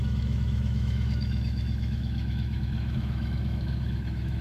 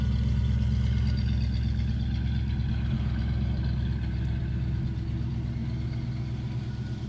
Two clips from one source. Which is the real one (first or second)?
second